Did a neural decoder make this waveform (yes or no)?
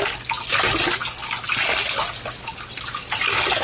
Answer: no